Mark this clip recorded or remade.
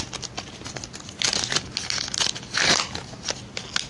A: recorded